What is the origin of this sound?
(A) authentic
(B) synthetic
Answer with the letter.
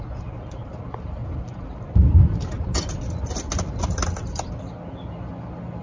A